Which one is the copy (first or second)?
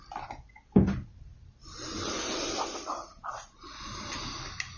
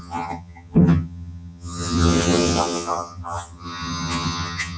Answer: second